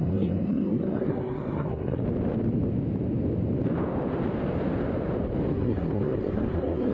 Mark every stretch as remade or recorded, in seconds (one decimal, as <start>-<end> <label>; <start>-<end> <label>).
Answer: 0.0-2.0 remade; 2.0-5.5 recorded; 5.5-6.9 remade